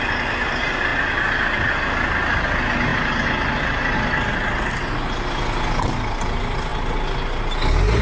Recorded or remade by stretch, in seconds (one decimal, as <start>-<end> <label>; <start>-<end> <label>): 0.0-8.0 recorded